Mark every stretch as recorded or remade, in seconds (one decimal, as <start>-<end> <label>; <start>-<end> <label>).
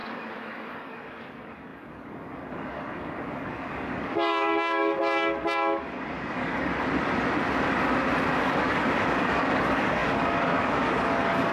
0.0-6.7 remade; 6.7-8.4 recorded; 8.4-11.5 remade